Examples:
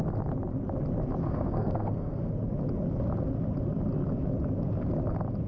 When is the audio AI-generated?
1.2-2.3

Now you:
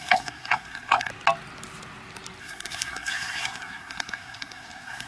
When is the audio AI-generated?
0.0-1.1; 2.4-5.1